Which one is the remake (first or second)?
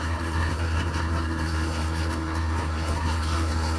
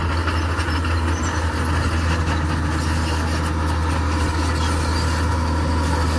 first